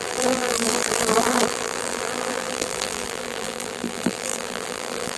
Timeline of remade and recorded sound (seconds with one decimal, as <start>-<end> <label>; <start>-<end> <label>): 0.0-5.2 remade